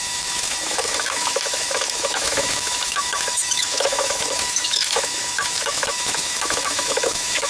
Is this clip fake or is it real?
fake